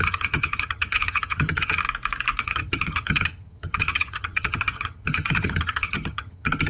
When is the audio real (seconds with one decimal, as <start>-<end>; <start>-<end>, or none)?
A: 1.8-2.4